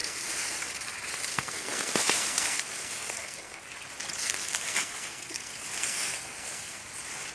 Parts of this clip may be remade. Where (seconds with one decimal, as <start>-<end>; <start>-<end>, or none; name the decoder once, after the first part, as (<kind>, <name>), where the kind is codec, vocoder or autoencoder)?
0.0-0.6 (codec, SNAC); 1.3-3.6; 4.2-6.8